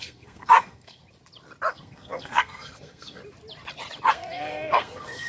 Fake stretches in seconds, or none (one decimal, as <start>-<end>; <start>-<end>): 0.0-1.0; 1.7-3.2; 4.1-5.3